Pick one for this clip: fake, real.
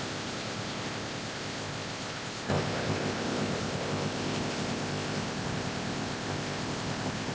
fake